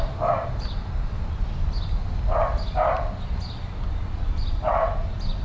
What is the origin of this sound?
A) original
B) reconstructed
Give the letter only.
A